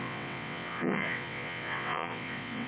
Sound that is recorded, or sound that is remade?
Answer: remade